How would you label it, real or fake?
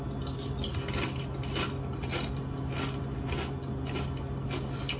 real